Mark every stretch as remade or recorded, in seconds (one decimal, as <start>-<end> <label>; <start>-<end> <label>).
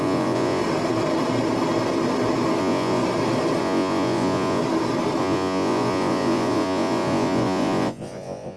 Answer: 0.0-0.6 remade; 0.6-2.6 recorded; 2.6-3.0 remade; 3.0-3.6 recorded; 3.6-4.6 remade; 4.6-5.2 recorded; 5.2-8.6 remade